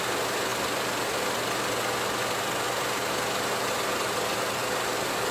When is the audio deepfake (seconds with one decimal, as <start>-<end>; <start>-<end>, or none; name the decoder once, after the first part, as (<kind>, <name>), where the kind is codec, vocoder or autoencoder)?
none